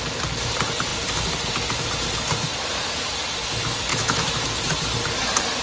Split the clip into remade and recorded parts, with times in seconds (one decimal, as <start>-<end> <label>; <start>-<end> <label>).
0.0-3.9 recorded; 3.9-4.6 remade; 4.6-5.6 recorded